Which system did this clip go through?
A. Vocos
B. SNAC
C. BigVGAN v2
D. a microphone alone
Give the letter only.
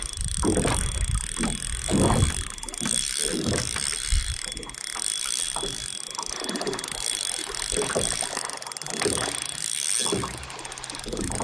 D